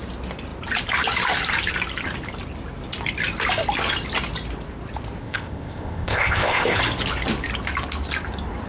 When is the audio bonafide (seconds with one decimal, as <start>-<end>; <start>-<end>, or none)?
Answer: 0.0-5.2; 6.8-8.7